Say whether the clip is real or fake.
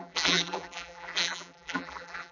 fake